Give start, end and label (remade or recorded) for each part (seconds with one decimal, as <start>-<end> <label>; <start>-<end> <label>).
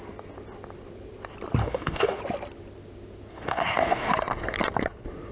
0.0-1.6 recorded; 1.6-2.2 remade; 2.2-3.3 recorded; 3.3-4.1 remade; 4.1-5.3 recorded